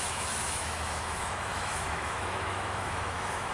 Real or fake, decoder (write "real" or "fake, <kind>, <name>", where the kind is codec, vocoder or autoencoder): fake, autoencoder, DAC-VAE